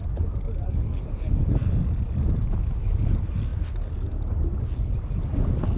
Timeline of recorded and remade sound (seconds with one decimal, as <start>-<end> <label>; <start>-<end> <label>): 0.0-2.5 recorded; 2.5-3.0 remade; 3.0-5.8 recorded